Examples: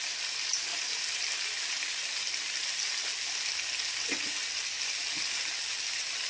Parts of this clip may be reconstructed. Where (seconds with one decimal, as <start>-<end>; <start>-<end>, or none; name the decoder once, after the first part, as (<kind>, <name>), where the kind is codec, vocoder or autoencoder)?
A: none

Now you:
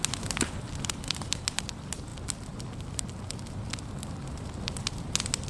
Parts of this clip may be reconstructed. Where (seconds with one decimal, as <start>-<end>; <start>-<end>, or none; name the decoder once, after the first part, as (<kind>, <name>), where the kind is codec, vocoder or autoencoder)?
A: none

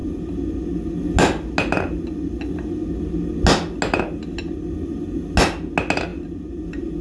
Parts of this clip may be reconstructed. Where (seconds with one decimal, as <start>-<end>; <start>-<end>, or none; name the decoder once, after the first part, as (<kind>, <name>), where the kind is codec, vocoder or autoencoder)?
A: none